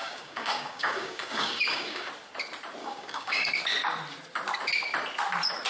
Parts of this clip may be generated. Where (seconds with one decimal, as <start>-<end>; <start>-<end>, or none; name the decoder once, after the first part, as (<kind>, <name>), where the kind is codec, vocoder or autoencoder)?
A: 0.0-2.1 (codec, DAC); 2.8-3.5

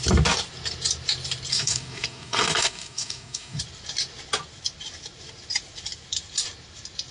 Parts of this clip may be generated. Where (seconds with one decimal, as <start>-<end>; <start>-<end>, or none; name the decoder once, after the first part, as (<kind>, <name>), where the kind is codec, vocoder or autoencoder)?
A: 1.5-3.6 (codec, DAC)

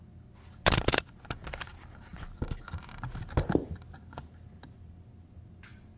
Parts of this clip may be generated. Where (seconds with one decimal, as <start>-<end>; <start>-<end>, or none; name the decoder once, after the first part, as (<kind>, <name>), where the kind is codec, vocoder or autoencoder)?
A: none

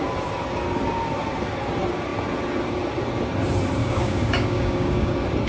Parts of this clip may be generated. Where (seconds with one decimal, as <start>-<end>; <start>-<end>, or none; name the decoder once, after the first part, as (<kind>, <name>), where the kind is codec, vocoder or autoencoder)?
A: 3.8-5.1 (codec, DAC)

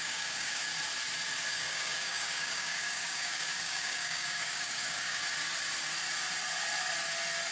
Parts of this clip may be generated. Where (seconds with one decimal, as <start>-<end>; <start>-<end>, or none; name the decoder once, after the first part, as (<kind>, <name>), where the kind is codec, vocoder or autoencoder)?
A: 0.0-0.7 (codec, DAC); 1.5-5.2

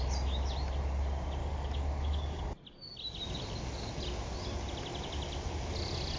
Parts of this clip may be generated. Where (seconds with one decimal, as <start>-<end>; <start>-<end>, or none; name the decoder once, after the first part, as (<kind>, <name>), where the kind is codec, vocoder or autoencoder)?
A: 1.4-2.4 (codec, DAC)

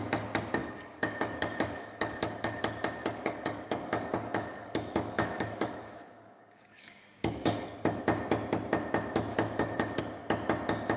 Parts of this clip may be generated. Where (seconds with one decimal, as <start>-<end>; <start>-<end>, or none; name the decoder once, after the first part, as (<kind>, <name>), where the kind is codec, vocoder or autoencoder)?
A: 0.6-2.6 (codec, DAC); 3.0-8.0; 9.3-10.0

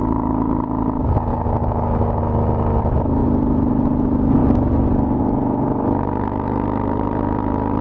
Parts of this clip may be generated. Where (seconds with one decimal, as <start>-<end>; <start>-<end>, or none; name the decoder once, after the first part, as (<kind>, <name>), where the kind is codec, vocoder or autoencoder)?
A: 1.3-2.2 (codec, DAC)